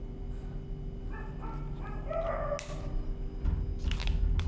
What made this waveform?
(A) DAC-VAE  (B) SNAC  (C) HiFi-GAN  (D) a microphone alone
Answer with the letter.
D